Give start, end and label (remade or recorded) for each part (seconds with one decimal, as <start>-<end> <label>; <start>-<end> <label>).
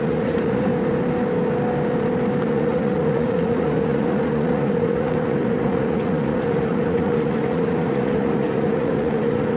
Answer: 0.0-0.7 remade; 0.7-2.4 recorded; 2.4-9.6 remade